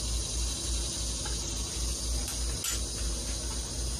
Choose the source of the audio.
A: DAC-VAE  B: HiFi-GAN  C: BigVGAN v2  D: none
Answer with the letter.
D